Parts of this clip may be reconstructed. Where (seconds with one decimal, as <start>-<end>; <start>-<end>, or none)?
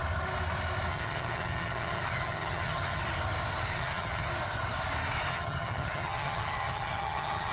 0.9-3.0; 3.7-4.3; 5.3-7.5